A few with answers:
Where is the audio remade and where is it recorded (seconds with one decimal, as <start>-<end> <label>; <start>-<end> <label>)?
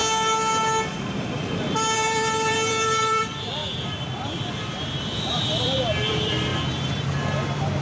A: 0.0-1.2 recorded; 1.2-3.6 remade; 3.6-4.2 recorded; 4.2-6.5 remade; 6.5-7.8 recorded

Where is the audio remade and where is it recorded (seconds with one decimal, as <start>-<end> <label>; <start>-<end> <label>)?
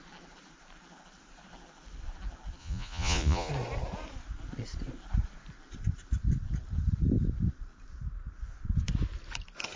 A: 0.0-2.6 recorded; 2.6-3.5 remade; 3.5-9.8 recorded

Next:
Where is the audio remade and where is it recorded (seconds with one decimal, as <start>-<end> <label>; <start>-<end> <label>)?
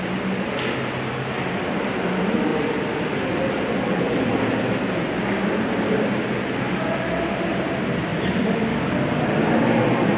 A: 0.0-2.5 recorded; 2.5-7.1 remade; 7.1-8.1 recorded; 8.1-8.9 remade; 8.9-10.2 recorded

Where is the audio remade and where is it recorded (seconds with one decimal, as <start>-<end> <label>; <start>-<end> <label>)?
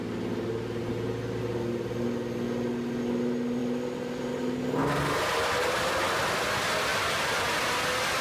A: 0.0-6.9 recorded; 6.9-7.6 remade; 7.6-8.2 recorded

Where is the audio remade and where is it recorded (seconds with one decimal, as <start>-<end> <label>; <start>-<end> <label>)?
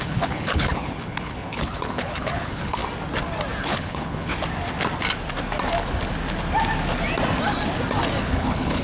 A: 0.0-2.8 remade; 2.8-3.6 recorded; 3.6-4.3 remade; 4.3-8.2 recorded; 8.2-8.8 remade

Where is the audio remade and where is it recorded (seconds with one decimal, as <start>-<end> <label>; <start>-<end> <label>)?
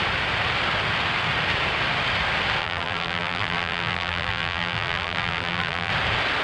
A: 0.0-2.6 recorded; 2.6-5.9 remade; 5.9-6.4 recorded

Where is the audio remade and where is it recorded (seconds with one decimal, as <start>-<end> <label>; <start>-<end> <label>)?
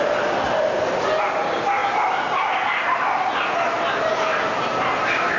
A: 0.0-5.4 recorded